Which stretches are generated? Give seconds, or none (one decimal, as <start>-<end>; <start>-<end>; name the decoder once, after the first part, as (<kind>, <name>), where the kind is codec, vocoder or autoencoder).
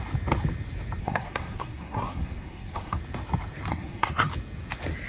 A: 1.0-3.0 (codec, SNAC); 3.7-4.3